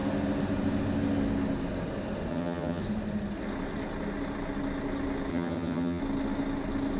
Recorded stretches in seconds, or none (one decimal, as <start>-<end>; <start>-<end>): 0.0-2.3; 2.8-5.3; 6.0-7.0

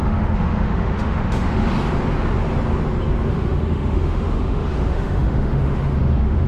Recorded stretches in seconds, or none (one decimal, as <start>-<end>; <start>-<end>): 1.7-3.3

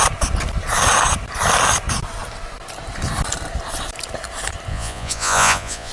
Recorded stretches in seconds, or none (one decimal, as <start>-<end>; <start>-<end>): 0.0-4.7

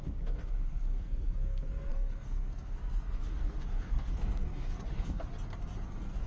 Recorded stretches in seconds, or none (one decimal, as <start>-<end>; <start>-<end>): 5.3-5.8

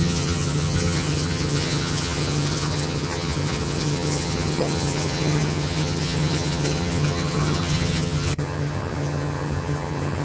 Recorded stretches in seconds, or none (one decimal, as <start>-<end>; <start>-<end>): none

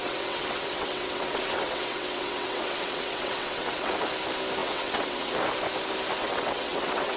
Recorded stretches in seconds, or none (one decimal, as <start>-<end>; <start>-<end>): 3.9-4.6; 5.3-6.2